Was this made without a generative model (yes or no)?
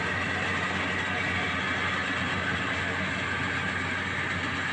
yes